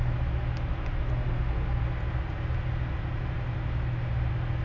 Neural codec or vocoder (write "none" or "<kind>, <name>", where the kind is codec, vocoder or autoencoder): none